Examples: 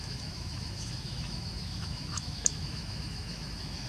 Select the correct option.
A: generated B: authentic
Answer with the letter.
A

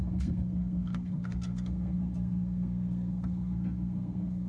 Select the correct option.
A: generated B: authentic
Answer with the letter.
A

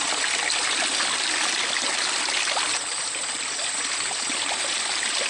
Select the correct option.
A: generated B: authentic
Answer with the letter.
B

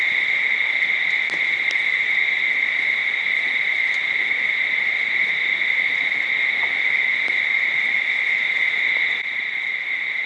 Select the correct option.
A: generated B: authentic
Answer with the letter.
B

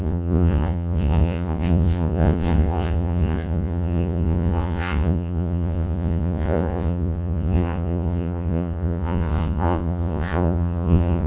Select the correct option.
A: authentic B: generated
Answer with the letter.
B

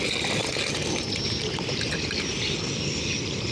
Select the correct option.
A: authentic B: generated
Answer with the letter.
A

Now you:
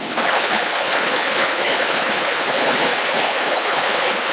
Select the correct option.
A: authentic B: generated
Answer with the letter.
B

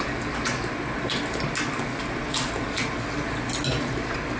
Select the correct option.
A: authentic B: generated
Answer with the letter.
A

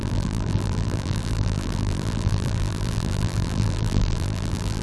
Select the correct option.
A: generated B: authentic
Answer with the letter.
A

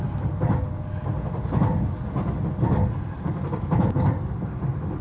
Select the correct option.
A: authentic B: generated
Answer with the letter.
A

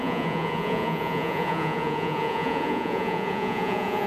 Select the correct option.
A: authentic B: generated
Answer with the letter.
B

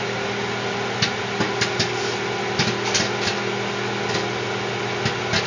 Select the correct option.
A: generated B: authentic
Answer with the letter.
B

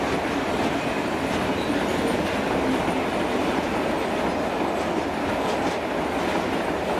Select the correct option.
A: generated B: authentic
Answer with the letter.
B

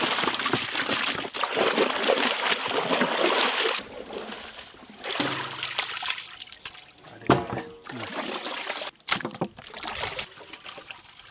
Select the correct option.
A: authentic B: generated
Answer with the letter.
A